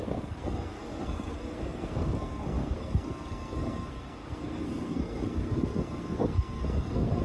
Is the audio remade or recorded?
remade